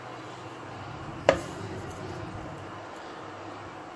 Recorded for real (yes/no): no